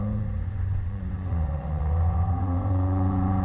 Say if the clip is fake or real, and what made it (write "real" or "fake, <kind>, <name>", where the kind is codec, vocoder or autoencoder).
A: fake, vocoder, Vocos